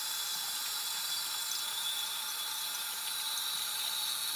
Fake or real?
real